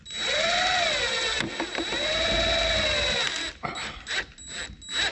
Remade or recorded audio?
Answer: recorded